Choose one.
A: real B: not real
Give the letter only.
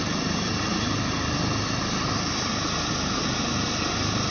A